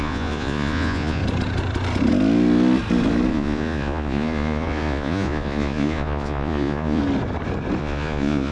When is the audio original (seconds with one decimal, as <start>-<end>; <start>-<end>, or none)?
1.2-3.3; 7.0-7.8